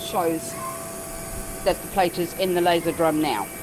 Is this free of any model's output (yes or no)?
yes